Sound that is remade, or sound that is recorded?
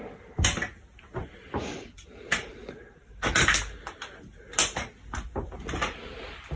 recorded